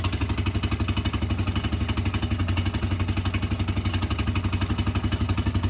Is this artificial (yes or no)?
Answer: no